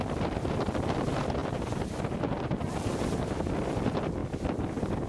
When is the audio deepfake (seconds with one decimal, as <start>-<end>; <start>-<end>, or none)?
none